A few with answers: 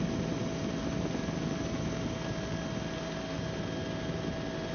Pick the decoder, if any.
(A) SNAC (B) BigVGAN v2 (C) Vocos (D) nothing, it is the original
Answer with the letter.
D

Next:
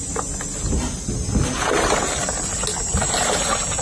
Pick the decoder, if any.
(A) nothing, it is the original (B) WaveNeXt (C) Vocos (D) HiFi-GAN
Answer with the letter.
A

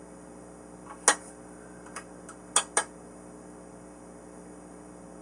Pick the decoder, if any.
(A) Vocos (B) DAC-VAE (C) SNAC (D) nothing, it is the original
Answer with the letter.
D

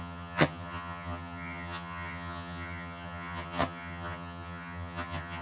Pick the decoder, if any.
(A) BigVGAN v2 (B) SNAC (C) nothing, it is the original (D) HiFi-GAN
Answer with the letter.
D